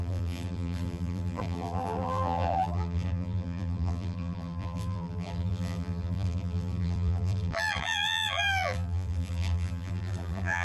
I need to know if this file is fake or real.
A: fake